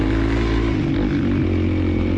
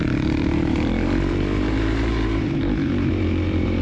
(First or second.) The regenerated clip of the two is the second